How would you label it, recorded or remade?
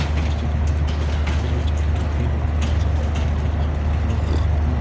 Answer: recorded